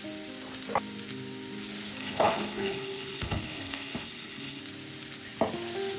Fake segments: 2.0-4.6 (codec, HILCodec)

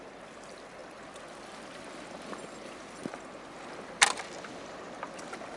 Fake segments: none

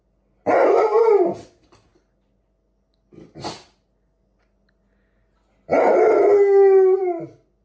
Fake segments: none

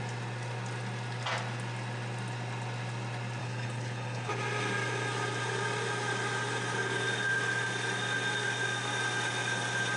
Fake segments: 3.4-4.3 (codec, HILCodec)

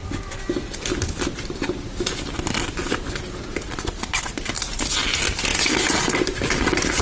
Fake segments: none